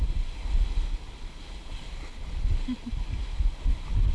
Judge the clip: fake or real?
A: real